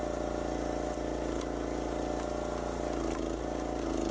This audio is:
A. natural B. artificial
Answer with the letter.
A